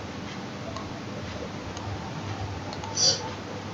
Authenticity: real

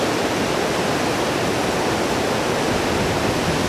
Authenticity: real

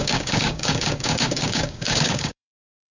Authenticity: fake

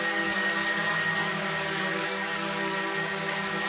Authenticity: fake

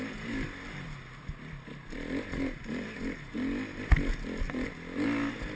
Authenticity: real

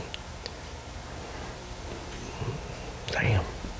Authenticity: real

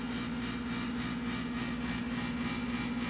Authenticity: real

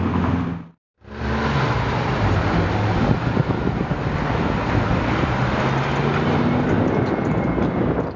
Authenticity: real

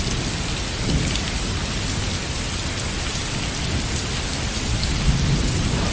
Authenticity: real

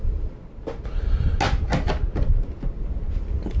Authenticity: real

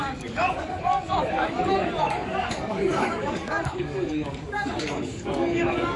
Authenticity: fake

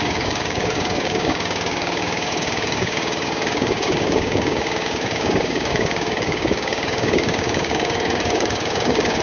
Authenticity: fake